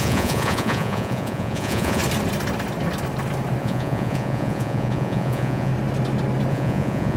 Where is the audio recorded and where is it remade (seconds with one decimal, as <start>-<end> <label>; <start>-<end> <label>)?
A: 0.0-2.0 remade; 2.0-3.6 recorded; 3.6-5.7 remade; 5.7-6.5 recorded; 6.5-7.2 remade